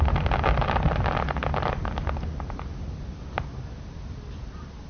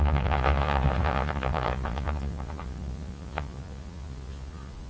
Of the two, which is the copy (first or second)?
second